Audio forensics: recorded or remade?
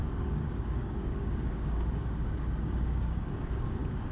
remade